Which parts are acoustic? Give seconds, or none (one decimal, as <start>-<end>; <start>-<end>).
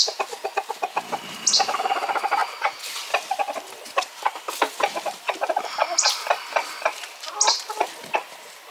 0.0-6.6; 7.3-8.7